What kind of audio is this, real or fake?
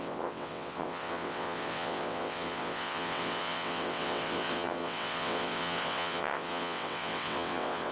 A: fake